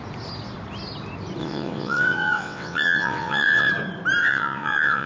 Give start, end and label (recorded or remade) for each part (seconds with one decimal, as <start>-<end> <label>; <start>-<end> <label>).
0.0-1.4 recorded; 1.4-3.7 remade; 3.7-4.2 recorded; 4.2-5.1 remade